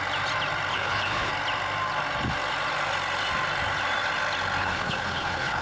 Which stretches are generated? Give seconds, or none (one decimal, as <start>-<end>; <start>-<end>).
0.7-1.3; 4.6-5.6

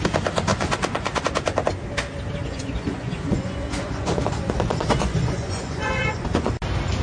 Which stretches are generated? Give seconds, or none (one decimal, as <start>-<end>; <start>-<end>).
0.5-1.2; 2.4-6.5

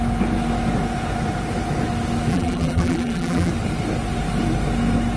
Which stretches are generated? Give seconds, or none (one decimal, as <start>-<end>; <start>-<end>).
2.3-3.5

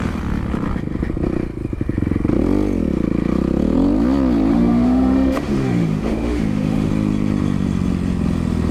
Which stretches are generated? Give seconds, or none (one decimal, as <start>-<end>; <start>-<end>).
4.5-6.9